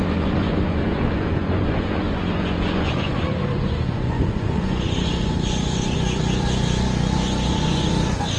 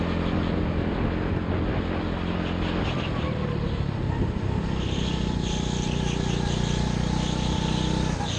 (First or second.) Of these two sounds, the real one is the second